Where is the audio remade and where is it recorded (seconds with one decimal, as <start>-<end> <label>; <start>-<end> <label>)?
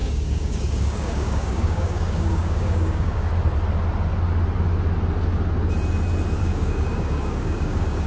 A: 0.0-3.3 remade; 3.3-6.4 recorded; 6.4-8.1 remade